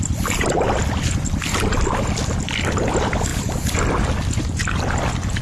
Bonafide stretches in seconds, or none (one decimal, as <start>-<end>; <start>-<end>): 0.0-5.4